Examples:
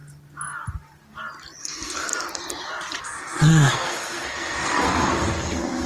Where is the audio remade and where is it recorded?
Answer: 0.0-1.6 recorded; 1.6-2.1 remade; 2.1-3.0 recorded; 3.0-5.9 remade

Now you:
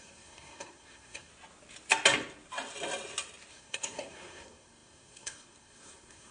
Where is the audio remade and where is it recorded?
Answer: 0.0-1.3 remade; 1.3-3.5 recorded; 3.5-6.3 remade